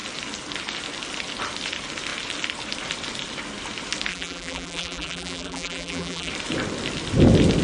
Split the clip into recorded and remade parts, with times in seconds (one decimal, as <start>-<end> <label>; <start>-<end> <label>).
0.0-4.1 recorded; 4.1-6.3 remade; 6.3-7.6 recorded